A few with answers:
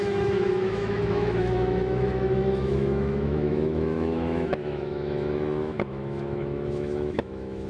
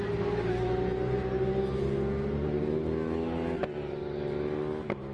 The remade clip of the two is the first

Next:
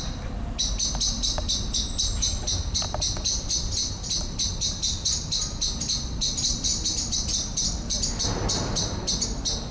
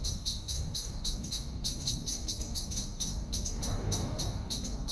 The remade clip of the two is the second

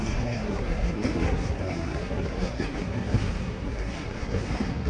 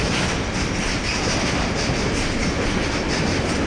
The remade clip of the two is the first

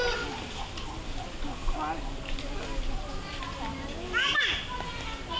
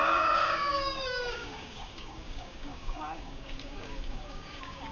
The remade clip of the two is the second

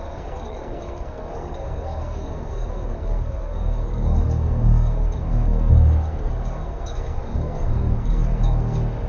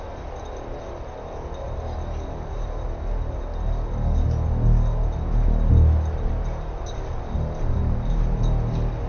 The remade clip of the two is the first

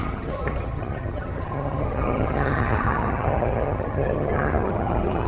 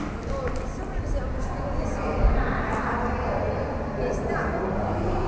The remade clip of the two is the first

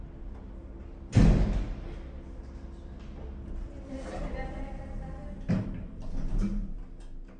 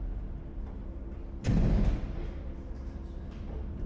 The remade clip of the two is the second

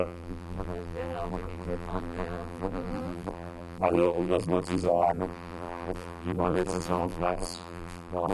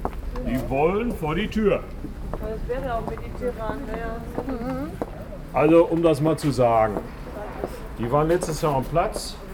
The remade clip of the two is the first